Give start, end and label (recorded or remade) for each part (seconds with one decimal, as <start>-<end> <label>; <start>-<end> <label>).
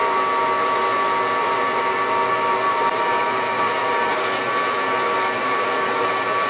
0.0-2.7 recorded; 2.7-4.2 remade; 4.2-5.4 recorded; 5.4-6.1 remade; 6.1-6.5 recorded